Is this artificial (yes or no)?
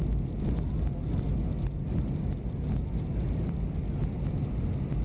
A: no